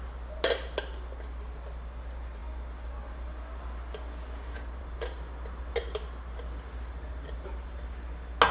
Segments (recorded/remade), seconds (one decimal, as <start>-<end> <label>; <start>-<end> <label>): 0.0-8.5 recorded